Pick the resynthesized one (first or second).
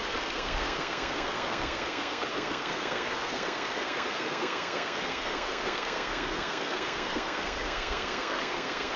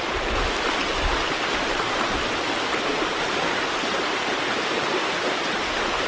first